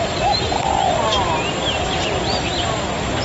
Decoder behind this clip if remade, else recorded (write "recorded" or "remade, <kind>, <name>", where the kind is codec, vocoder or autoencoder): remade, vocoder, BigVGAN v2